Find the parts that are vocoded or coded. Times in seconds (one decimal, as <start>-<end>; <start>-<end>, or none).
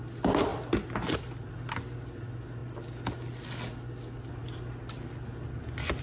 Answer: none